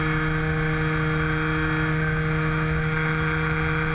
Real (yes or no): yes